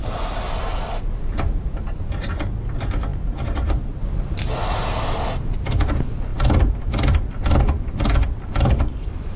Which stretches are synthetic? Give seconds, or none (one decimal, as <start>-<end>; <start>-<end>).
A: none